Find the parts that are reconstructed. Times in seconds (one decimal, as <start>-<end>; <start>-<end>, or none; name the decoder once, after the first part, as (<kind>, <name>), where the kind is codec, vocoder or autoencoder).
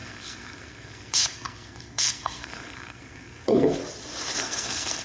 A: 0.0-3.8 (codec, SNAC); 4.4-5.0